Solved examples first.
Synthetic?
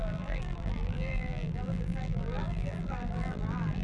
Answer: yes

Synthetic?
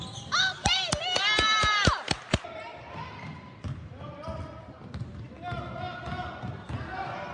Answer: no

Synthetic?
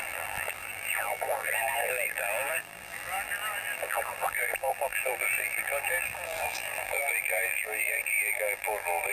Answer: yes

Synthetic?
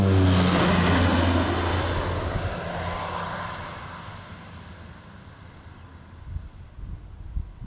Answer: no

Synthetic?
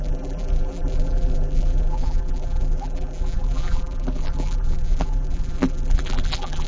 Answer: yes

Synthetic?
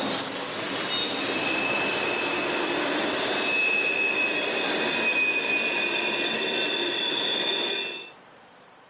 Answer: no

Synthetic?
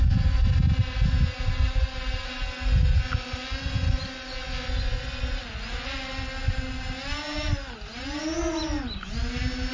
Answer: no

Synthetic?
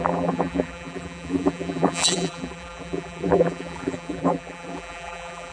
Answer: yes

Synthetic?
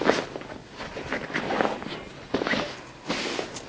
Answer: no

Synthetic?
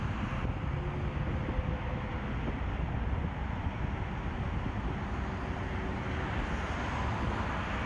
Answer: no